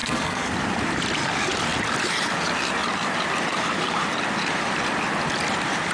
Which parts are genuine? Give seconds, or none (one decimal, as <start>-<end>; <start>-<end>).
0.5-5.9